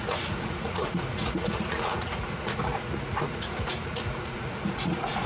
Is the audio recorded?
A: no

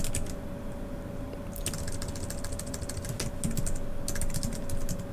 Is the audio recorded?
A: yes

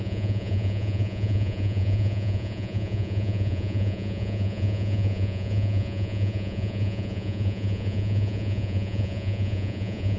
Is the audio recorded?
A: no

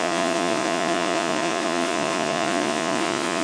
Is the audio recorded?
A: no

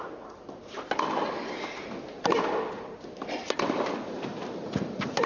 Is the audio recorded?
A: yes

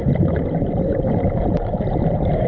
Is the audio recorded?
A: yes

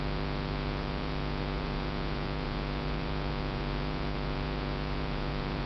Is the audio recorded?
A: no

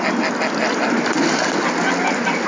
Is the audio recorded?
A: yes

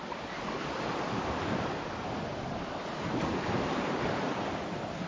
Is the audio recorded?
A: yes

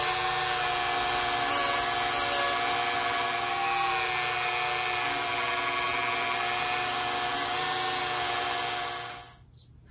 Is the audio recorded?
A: yes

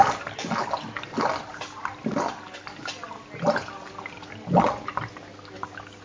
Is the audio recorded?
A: yes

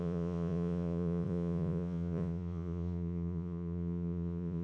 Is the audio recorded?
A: no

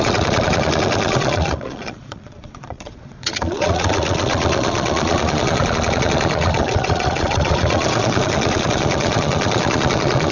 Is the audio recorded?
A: no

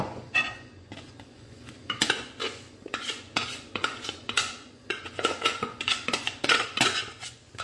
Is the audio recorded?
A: no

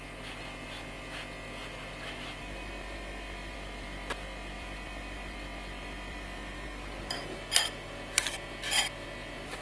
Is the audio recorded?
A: yes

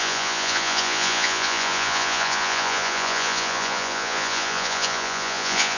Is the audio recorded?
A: no